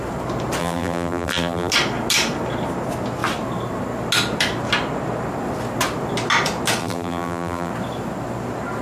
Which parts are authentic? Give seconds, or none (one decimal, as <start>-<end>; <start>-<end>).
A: 0.0-0.6; 1.7-6.8; 7.7-8.8